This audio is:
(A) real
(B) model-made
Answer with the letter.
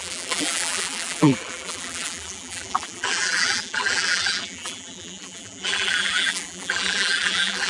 B